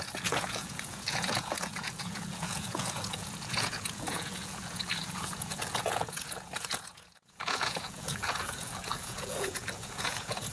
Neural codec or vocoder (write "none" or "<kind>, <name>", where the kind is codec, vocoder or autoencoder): vocoder, Vocos